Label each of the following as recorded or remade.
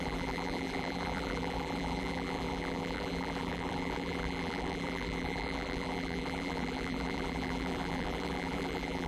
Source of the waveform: remade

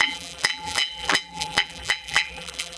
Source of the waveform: remade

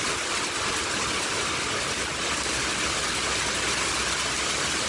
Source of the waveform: recorded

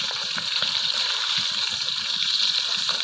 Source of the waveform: remade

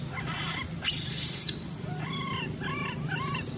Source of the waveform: remade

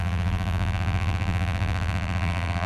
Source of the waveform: remade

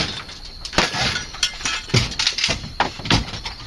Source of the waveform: recorded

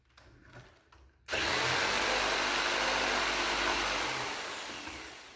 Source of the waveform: recorded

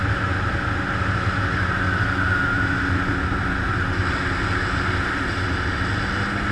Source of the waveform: recorded